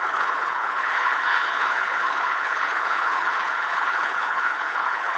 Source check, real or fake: fake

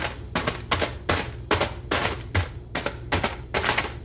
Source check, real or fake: real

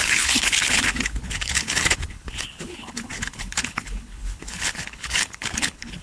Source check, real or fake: fake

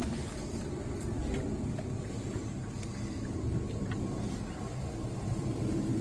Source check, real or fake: real